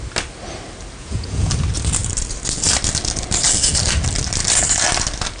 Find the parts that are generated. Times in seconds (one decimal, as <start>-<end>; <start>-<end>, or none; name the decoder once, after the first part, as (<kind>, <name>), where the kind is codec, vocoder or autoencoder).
1.0-1.5 (vocoder, Vocos)